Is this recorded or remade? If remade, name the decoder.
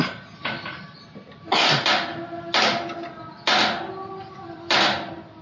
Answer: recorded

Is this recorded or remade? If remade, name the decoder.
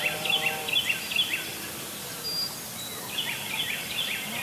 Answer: recorded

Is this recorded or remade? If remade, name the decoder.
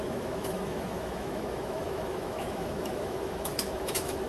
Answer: remade, autoencoder, DAC-VAE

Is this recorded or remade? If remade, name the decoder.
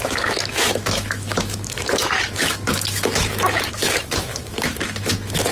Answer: remade, autoencoder, DAC-VAE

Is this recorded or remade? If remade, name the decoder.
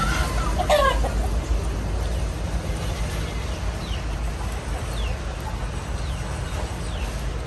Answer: recorded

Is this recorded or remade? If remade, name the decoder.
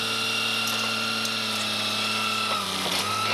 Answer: recorded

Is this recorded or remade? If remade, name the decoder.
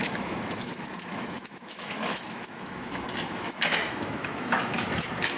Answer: remade, autoencoder, DAC-VAE